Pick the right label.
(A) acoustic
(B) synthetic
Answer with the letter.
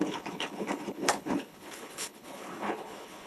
B